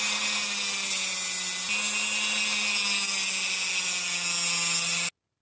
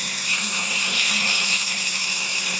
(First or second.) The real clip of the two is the first